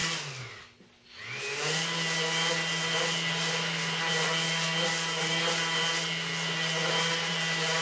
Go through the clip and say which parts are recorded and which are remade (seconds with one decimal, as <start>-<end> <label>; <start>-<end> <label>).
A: 0.0-7.8 recorded